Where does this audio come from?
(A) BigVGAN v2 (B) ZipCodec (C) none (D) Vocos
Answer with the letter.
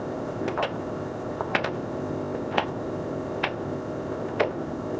B